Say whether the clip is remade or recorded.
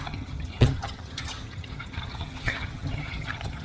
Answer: remade